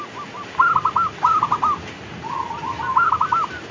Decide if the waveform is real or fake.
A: real